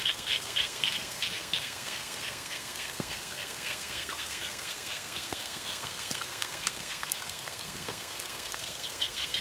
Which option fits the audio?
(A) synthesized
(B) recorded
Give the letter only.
A